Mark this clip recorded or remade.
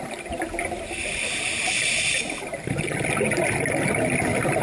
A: recorded